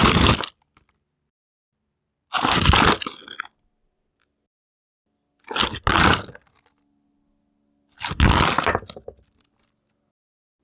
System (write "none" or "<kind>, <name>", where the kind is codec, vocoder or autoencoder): none